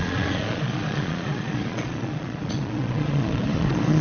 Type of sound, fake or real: fake